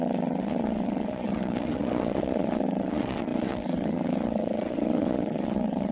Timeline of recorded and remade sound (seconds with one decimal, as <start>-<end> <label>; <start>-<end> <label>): 0.0-5.9 remade